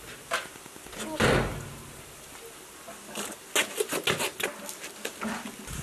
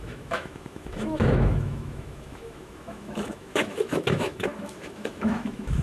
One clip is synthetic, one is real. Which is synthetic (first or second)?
second